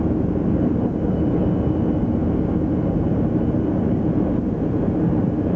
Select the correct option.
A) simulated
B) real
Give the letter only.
A